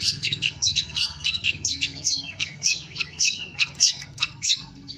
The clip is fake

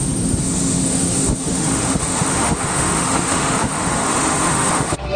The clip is fake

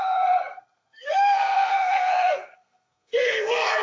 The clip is fake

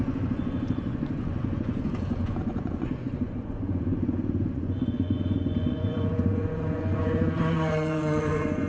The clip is fake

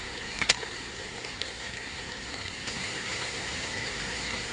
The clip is fake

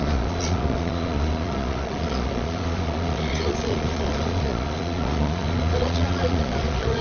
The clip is fake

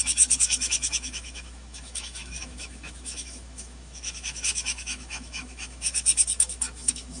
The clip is fake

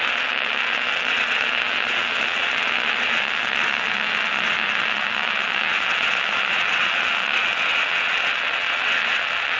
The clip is fake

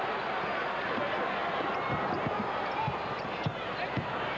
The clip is real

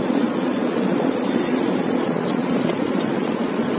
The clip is fake